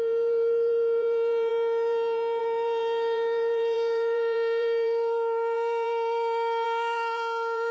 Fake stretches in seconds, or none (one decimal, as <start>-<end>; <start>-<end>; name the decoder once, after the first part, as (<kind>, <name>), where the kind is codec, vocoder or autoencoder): 0.0-7.7 (vocoder, BigVGAN v2)